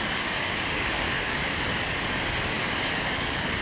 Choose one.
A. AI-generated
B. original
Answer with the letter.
A